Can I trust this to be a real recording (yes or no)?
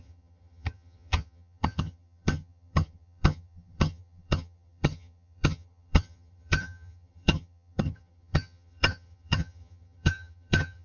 no